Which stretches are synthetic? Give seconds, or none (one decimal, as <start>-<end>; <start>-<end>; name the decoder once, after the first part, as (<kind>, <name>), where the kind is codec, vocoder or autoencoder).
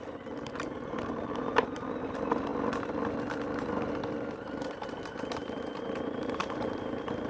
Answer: 0.0-2.5 (vocoder, BigVGAN v2); 3.9-7.3